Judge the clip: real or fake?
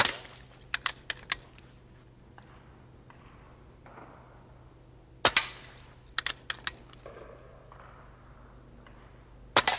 real